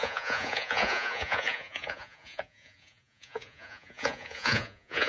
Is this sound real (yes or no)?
no